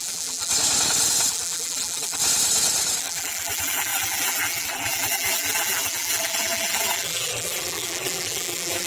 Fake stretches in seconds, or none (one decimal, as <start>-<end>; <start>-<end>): 0.0-0.5; 1.3-2.2; 3.0-8.9